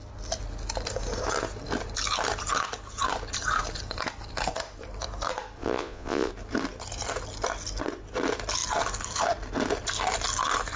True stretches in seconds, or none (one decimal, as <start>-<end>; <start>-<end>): 0.0-5.6; 6.3-10.8